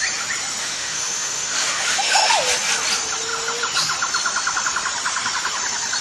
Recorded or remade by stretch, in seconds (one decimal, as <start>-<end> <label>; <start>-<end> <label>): 0.0-0.6 recorded; 0.6-2.3 remade; 2.3-6.0 recorded